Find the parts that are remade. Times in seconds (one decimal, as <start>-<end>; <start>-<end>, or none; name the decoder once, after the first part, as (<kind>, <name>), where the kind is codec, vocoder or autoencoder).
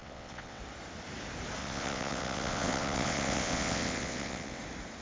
0.0-0.6 (vocoder, WaveNeXt); 1.6-4.6